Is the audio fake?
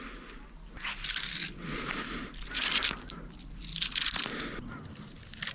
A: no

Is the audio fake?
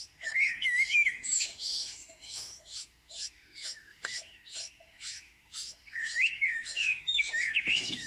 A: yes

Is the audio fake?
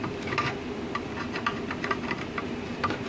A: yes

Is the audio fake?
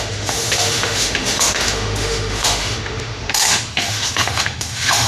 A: yes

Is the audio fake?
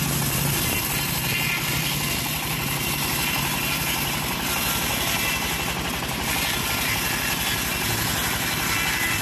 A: no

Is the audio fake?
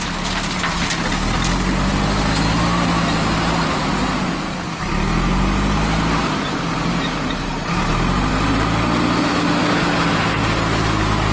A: no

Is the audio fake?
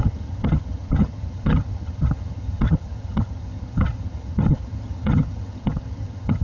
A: yes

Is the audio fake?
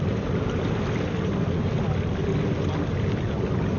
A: no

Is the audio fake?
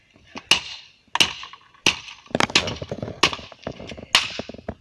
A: no